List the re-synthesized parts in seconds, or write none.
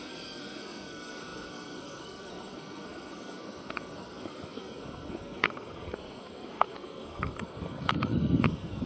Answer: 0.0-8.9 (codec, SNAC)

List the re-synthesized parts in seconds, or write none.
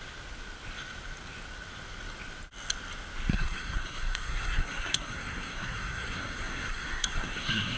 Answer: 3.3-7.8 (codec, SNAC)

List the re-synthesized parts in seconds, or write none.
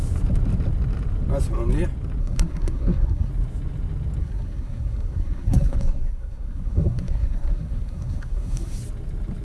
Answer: 2.2-3.3 (codec, SNAC); 4.2-8.8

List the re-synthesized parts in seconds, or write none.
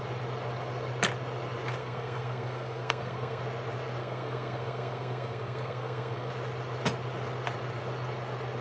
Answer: 1.8-3.4 (codec, SNAC); 4.0-6.3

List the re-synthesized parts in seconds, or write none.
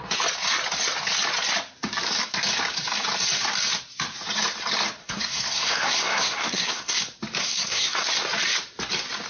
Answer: 5.0-7.0 (codec, SNAC); 7.4-8.1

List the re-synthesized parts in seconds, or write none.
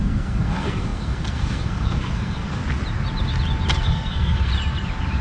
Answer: 0.0-2.6 (codec, SNAC); 3.8-4.5